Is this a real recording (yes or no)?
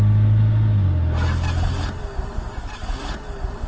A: yes